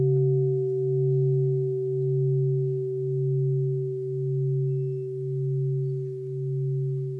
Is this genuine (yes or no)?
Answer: yes